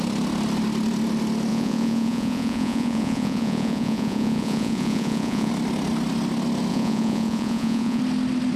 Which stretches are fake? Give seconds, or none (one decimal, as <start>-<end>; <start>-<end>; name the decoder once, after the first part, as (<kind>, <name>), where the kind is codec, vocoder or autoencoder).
1.5-5.5 (vocoder, Vocos); 6.7-8.0